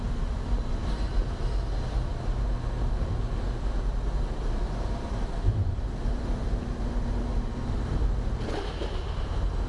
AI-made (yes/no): no